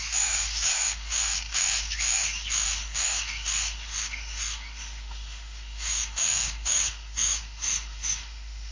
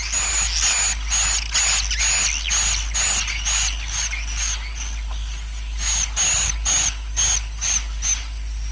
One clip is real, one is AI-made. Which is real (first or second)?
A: second